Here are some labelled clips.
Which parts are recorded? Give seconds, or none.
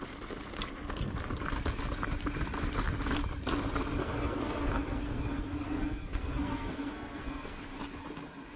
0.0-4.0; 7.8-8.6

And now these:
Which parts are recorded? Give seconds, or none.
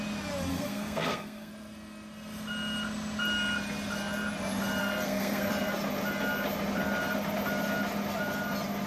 0.0-0.5; 1.5-4.8; 5.5-8.9